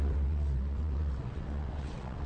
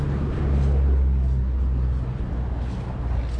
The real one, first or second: second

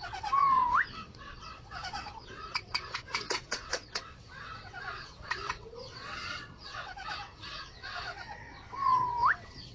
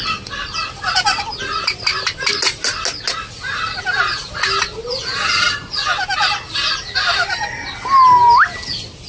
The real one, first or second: second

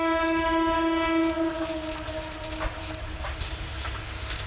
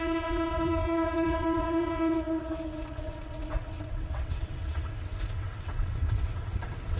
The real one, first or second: first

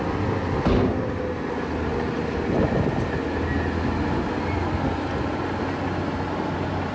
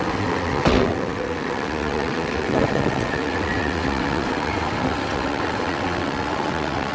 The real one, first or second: first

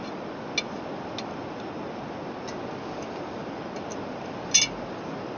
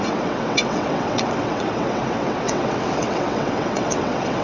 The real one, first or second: first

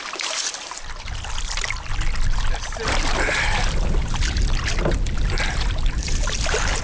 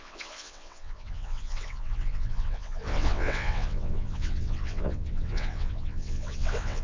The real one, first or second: first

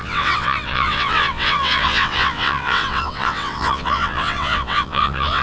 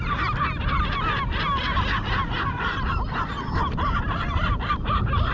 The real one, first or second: second